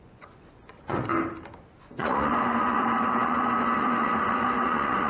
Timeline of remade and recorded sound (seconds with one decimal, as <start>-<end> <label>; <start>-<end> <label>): 0.0-1.1 remade; 1.1-1.8 recorded; 1.8-5.1 remade